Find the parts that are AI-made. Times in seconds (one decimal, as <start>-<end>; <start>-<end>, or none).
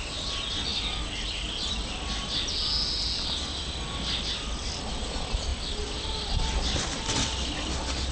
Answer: none